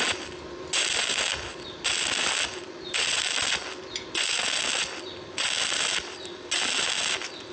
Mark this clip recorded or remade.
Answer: recorded